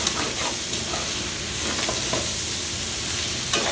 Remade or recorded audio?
recorded